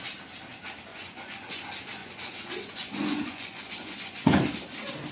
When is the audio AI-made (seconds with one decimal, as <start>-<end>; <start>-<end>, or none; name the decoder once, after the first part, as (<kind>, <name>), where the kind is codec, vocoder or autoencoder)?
0.9-1.6 (vocoder, Vocos); 2.0-4.4